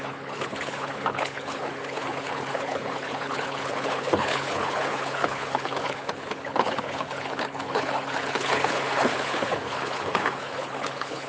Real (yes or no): no